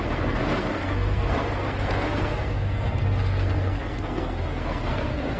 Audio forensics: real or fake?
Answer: fake